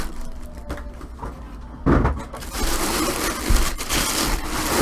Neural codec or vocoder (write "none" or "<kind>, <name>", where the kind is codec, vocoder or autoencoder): none